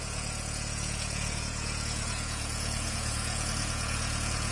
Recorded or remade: remade